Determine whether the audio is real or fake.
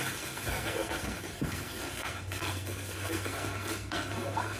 fake